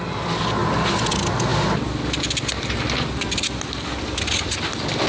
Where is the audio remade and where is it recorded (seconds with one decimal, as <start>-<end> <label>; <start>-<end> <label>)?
0.0-5.1 recorded